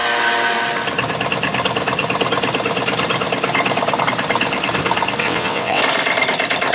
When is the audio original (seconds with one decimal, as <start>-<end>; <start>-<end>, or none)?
0.0-5.2; 5.8-6.7